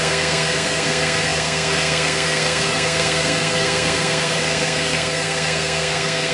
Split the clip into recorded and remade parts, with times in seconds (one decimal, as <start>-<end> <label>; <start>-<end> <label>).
0.0-6.3 remade